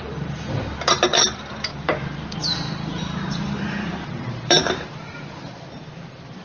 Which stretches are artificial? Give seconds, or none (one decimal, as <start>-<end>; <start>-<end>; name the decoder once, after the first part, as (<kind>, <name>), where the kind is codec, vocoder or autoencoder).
1.7-5.5 (vocoder, BigVGAN v2)